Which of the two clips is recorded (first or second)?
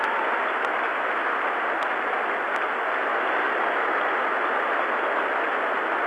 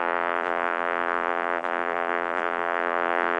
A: first